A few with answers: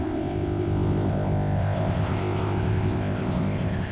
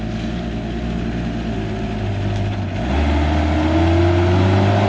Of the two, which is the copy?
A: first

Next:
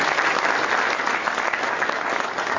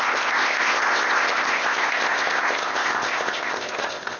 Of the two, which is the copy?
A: second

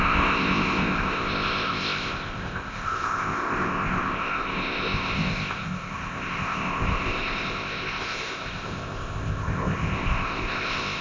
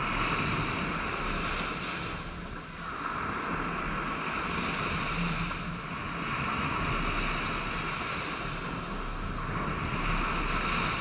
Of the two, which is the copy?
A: first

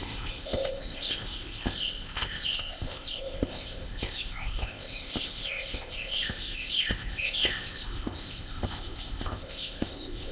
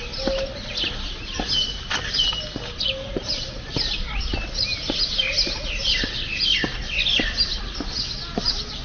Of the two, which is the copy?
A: first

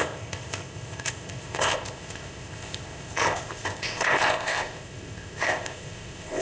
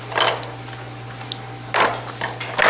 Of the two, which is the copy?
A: first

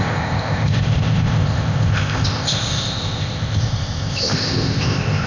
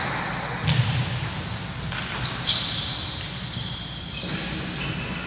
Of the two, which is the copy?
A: first